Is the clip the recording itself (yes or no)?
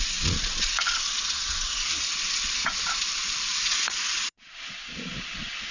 no